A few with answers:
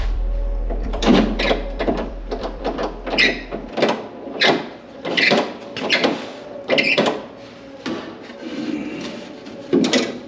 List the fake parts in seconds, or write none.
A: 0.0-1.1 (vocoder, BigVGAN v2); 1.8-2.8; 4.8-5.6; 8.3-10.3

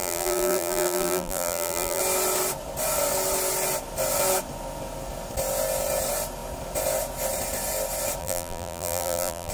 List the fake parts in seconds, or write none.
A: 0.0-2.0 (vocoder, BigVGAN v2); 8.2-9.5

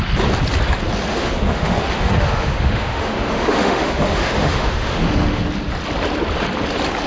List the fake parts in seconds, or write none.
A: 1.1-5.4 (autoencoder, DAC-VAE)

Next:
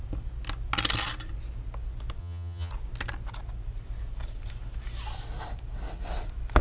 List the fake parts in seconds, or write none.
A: 2.2-2.7 (vocoder, HiFi-GAN)